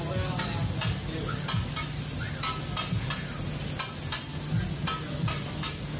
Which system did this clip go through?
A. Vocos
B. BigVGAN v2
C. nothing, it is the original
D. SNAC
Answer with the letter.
C